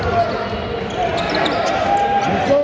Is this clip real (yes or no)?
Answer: yes